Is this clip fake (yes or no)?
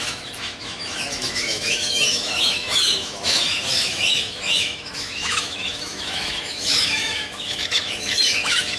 yes